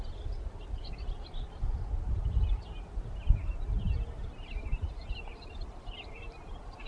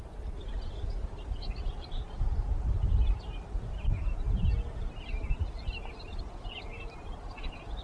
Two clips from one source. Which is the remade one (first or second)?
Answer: first